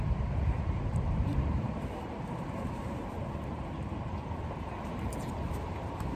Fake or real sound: fake